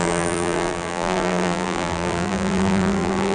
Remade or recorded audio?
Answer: remade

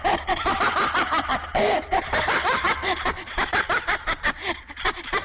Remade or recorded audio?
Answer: remade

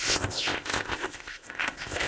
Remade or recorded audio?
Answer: remade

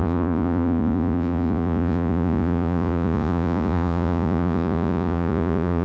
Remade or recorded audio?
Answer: remade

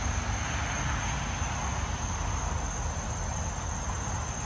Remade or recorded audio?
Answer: recorded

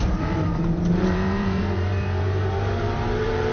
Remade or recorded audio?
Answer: remade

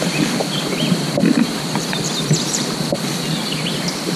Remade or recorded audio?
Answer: remade